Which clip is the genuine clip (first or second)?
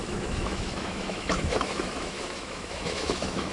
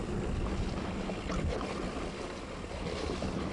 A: second